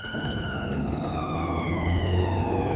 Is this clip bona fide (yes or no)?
no